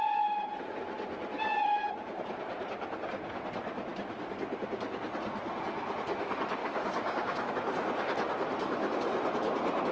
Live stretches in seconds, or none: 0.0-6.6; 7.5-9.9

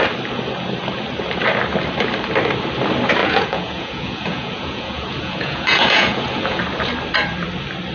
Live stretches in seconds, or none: 0.0-3.2; 6.6-7.9

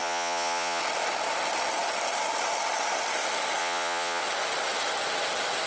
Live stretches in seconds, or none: 0.8-3.6; 4.2-5.7

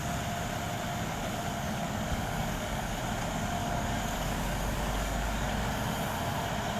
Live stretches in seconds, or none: 0.0-1.5; 3.0-3.6; 5.8-6.8